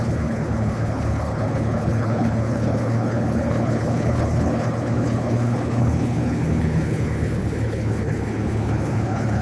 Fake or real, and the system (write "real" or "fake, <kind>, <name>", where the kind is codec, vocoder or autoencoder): fake, codec, HILCodec